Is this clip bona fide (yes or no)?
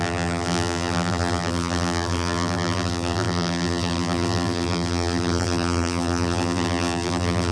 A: no